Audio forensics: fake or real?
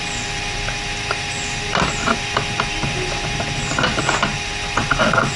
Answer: real